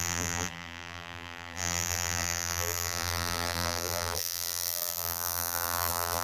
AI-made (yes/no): yes